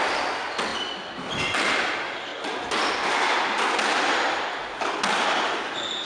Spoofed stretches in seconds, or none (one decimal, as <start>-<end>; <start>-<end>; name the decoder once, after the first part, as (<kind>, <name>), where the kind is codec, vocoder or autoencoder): none